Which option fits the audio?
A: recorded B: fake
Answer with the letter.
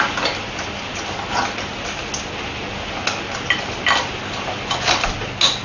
A